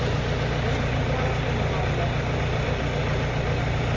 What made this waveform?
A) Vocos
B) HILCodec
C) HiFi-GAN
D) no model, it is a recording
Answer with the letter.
D